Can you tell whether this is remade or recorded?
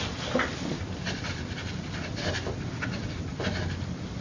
recorded